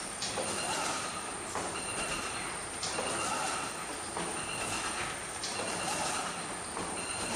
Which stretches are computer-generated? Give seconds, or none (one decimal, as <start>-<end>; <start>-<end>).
0.0-3.1; 5.2-7.4